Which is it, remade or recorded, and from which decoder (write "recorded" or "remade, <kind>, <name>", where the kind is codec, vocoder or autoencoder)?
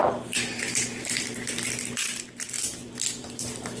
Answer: recorded